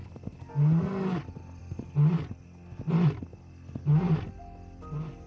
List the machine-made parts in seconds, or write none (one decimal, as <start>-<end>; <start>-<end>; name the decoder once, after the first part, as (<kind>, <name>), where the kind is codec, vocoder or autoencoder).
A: none